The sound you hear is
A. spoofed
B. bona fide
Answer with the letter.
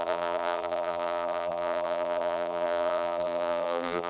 A